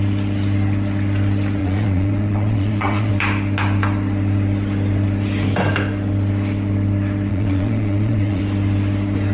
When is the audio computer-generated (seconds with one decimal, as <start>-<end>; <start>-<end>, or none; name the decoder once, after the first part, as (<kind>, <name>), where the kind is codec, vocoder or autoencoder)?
1.6-3.1 (vocoder, Vocos); 7.3-8.4